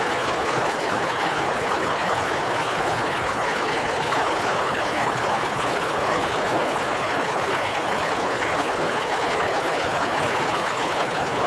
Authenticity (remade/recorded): remade